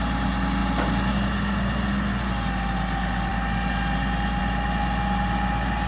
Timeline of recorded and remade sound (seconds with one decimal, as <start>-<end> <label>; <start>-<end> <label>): 0.0-5.9 recorded